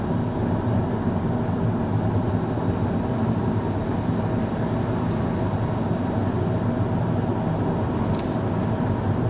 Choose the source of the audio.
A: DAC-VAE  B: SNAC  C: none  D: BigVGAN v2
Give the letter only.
C